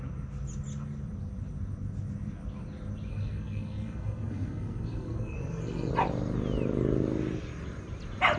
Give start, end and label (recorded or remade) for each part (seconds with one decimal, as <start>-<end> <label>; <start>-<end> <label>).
0.0-3.1 recorded; 3.1-5.9 remade; 5.9-8.4 recorded